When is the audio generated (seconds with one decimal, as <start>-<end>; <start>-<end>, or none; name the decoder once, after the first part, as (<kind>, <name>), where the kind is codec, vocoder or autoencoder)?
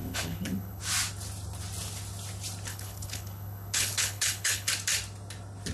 0.0-0.8 (codec, HILCodec); 2.7-4.7